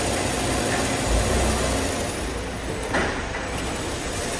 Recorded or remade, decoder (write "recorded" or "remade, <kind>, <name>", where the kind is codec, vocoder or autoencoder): recorded